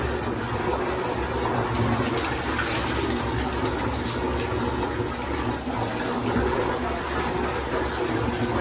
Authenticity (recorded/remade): recorded